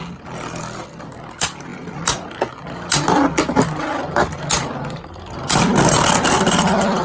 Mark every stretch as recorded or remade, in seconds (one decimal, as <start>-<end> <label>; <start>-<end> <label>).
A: 0.0-7.0 recorded